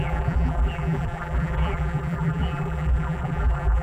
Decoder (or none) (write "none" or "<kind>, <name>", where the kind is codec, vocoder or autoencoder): vocoder, BigVGAN v2